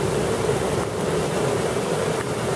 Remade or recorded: recorded